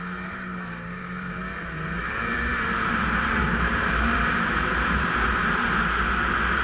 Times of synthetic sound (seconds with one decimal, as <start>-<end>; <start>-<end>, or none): 0.0-1.4; 2.0-6.6